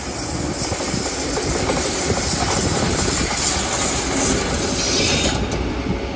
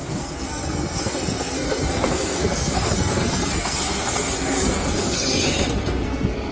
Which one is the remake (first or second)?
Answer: second